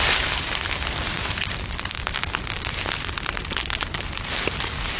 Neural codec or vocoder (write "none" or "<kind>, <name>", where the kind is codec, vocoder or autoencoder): none